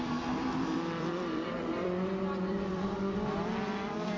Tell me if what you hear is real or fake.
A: fake